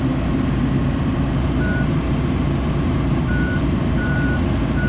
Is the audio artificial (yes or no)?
yes